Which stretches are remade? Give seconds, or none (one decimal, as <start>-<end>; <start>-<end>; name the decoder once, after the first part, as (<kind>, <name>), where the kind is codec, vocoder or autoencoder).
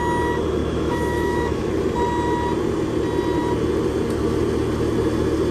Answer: 0.6-1.7 (autoencoder, DAC-VAE)